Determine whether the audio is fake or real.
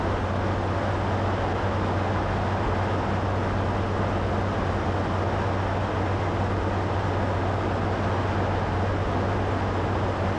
real